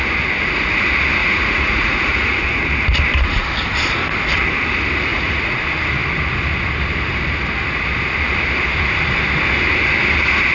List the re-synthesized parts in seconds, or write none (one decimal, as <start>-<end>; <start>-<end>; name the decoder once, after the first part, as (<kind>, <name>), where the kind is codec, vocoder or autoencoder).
1.2-2.6 (vocoder, Vocos); 5.1-5.6